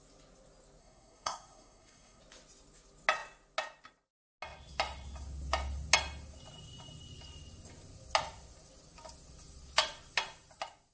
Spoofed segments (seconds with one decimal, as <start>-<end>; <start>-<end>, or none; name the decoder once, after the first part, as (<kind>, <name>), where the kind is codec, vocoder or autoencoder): 0.8-2.2 (codec, SNAC)